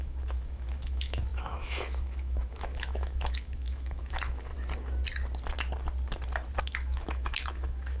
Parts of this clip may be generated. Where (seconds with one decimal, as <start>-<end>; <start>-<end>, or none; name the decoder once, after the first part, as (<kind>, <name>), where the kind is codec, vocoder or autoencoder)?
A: 0.0-4.5 (autoencoder, DAC-VAE); 6.6-8.0